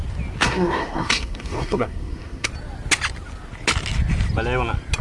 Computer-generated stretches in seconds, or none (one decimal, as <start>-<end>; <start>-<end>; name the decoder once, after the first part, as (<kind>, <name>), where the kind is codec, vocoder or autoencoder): 0.4-2.5 (codec, SNAC)